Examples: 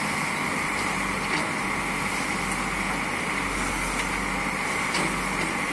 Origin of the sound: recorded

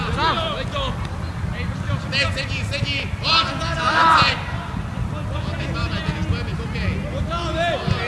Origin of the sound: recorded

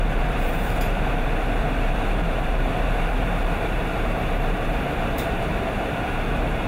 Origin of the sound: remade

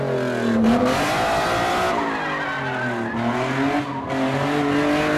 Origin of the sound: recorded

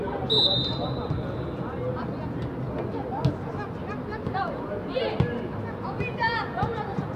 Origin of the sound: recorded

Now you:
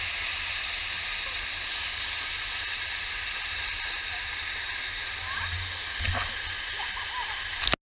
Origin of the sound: recorded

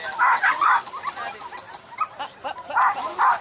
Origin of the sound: recorded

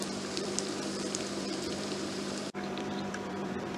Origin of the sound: remade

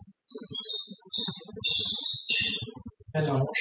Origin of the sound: recorded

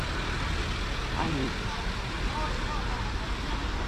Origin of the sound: recorded